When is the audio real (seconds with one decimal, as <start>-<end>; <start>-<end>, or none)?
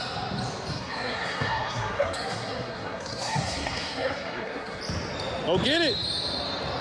0.0-0.7; 4.8-6.8